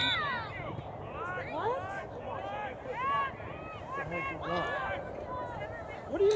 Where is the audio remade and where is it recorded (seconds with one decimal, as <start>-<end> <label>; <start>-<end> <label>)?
0.0-6.4 recorded